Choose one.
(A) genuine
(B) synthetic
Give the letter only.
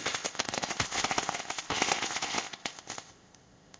B